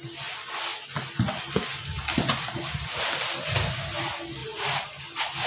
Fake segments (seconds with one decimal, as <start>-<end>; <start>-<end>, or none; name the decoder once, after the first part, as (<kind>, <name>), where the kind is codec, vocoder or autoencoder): 4.4-5.0 (vocoder, BigVGAN v2)